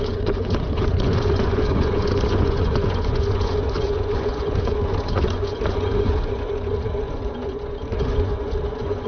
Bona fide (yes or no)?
no